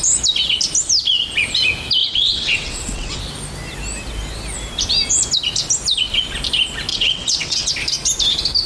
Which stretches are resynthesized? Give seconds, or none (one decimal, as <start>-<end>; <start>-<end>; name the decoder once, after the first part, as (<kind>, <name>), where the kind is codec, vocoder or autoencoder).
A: 2.0-3.2 (vocoder, WaveNeXt); 6.9-7.7